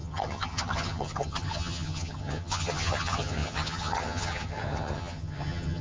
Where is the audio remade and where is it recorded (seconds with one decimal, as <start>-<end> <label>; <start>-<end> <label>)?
0.0-5.8 remade